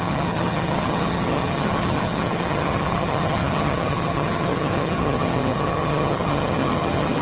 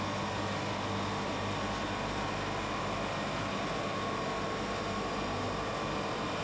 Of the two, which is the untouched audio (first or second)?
second